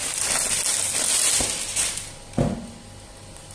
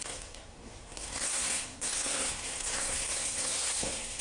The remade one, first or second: second